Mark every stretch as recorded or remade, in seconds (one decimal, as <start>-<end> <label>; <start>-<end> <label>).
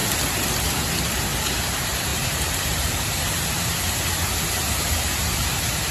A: 0.0-1.2 recorded; 1.2-5.9 remade